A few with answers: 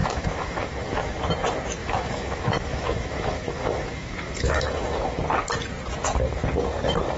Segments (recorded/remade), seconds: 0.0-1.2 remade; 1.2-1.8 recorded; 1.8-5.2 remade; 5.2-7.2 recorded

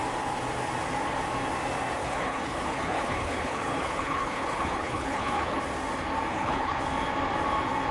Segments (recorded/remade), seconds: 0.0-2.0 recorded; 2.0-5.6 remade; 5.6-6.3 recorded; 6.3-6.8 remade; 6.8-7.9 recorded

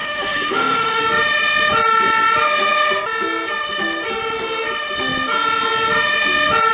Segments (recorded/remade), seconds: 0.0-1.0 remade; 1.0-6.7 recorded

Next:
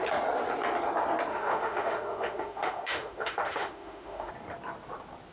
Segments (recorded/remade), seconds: 0.0-1.3 recorded; 1.3-4.3 remade; 4.3-5.3 recorded

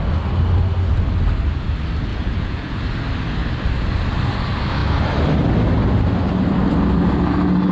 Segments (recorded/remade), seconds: 0.0-2.1 recorded; 2.1-2.8 remade; 2.8-7.7 recorded

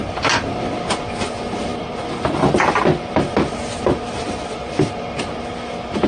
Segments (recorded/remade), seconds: 0.0-6.1 recorded

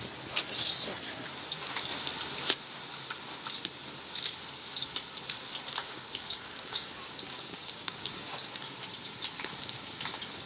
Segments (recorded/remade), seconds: 0.0-5.8 recorded; 5.8-8.5 remade; 8.5-10.5 recorded